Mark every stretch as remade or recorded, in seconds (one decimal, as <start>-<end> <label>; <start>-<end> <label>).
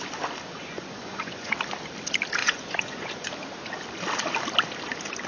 0.0-0.6 recorded; 0.6-1.5 remade; 1.5-2.4 recorded; 2.4-3.3 remade; 3.3-5.3 recorded